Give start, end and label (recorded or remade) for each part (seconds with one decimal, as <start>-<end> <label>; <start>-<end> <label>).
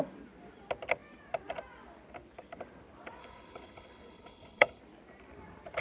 0.0-3.2 recorded; 3.2-4.8 remade; 4.8-5.8 recorded